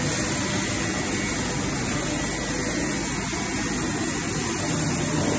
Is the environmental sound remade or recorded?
recorded